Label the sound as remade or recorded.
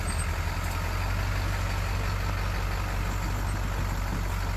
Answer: recorded